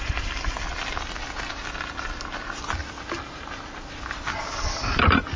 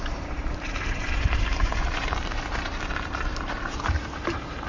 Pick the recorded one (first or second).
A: first